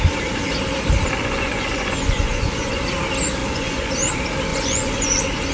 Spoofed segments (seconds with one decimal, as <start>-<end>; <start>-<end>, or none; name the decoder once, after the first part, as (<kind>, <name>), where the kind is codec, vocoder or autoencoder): 1.2-2.8 (vocoder, Vocos); 3.4-3.9; 4.5-5.1